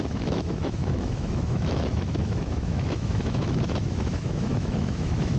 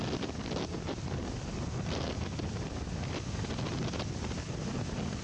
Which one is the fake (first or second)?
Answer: first